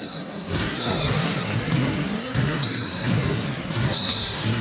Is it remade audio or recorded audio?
remade